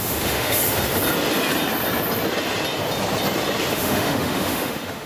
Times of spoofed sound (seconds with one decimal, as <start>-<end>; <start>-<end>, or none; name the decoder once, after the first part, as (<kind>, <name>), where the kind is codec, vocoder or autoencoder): 0.0-0.6 (autoencoder, DAC-VAE); 3.7-5.1